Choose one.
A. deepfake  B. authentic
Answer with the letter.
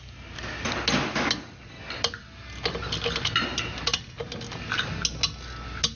B